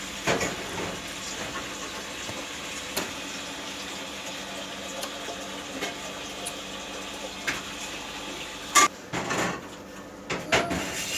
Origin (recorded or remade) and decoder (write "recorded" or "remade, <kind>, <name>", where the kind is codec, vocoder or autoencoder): recorded